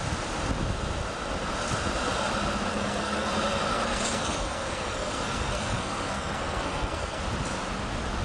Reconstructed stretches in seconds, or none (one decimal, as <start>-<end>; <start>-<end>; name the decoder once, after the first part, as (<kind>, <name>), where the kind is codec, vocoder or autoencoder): 2.7-3.3 (codec, SNAC); 3.7-7.2